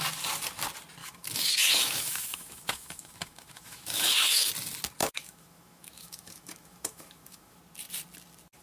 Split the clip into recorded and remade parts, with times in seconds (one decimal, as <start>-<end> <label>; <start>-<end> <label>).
0.0-1.0 recorded; 1.0-4.5 remade; 4.5-5.0 recorded; 5.0-7.6 remade; 7.6-8.6 recorded